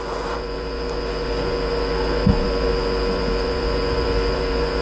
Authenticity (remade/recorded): remade